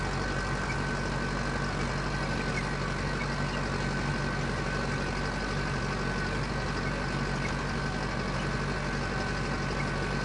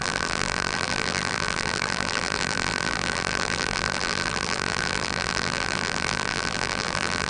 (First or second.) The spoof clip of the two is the second